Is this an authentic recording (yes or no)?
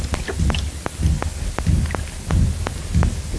yes